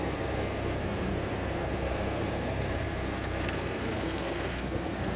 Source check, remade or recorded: remade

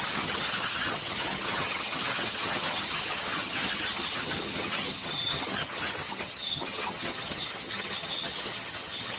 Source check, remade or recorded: remade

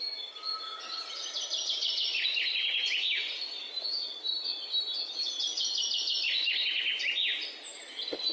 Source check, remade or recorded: recorded